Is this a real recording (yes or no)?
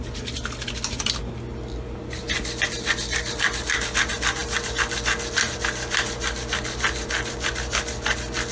yes